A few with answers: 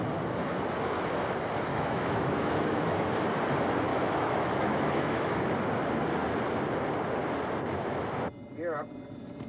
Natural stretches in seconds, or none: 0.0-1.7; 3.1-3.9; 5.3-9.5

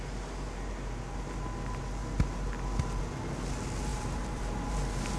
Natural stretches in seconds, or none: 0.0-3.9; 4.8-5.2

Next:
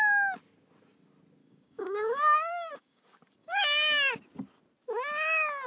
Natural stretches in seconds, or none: 0.0-1.4; 3.0-3.4; 4.1-5.7

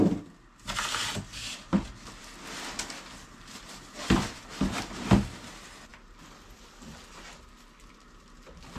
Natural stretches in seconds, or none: 0.0-8.8